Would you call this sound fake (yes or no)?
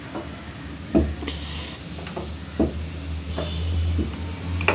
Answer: no